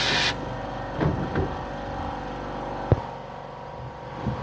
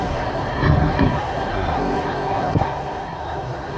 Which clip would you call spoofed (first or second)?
second